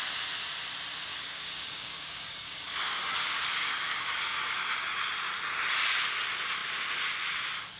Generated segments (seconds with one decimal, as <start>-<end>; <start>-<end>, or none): 1.1-5.0